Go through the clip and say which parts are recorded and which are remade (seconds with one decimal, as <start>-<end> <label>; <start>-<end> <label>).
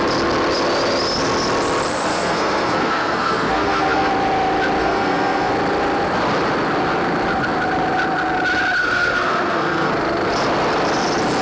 0.0-2.1 recorded; 2.1-4.1 remade; 4.1-4.8 recorded; 4.8-5.5 remade; 5.5-8.8 recorded; 8.8-9.9 remade; 9.9-11.4 recorded